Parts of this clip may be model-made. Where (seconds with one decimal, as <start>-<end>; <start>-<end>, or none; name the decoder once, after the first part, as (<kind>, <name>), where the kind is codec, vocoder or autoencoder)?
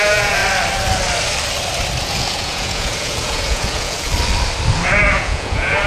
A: 0.0-0.4 (vocoder, Vocos); 2.0-4.1; 5.1-5.9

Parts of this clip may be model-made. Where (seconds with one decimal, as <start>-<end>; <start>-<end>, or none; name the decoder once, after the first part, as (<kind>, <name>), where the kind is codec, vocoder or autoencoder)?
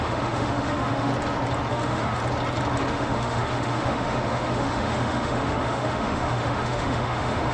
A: 0.0-1.1 (autoencoder, DAC-VAE); 1.7-2.2; 2.9-7.5